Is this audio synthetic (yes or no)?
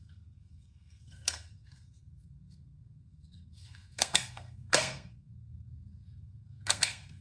yes